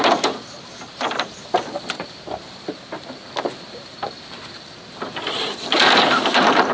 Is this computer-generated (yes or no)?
yes